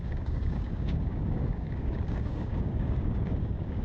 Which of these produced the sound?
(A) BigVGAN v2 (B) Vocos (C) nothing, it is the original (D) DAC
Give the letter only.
D